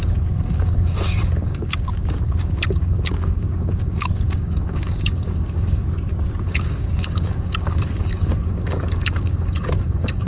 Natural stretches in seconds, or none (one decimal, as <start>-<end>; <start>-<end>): 5.8-6.4